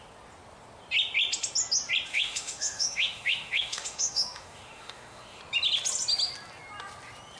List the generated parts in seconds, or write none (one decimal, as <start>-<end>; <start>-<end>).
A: 2.1-5.4